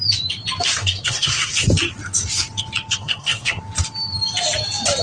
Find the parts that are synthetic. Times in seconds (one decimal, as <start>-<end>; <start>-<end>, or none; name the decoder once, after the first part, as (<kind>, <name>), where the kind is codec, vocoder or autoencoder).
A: 0.8-1.5 (codec, SNAC); 3.0-3.6